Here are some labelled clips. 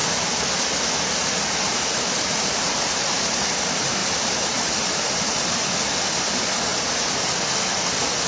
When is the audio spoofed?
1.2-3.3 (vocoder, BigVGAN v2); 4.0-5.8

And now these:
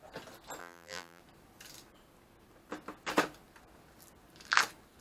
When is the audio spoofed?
0.6-1.2 (vocoder, BigVGAN v2)